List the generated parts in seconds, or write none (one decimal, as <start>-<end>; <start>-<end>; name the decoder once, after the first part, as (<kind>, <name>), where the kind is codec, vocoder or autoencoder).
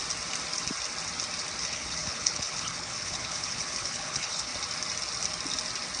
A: 1.6-4.5 (codec, HILCodec)